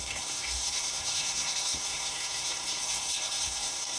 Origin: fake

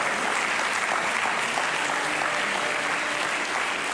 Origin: real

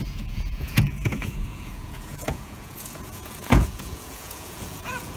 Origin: fake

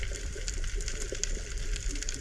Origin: real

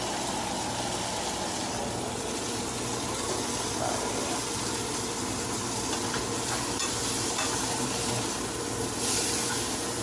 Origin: real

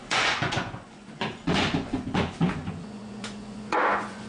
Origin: fake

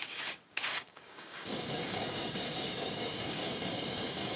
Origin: fake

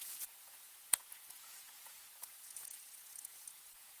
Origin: fake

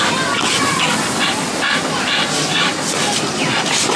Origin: real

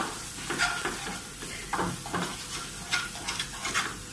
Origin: fake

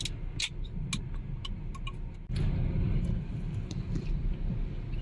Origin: real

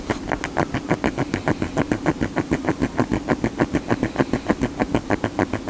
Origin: real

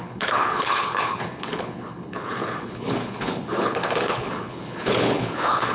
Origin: fake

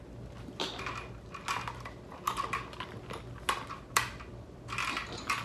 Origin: real